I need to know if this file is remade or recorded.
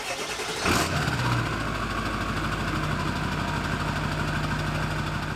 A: recorded